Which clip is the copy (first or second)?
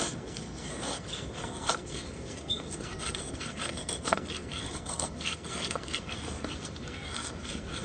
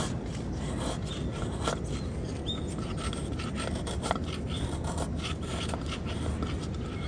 first